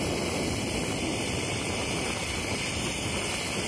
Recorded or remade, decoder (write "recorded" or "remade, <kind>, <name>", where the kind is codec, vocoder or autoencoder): recorded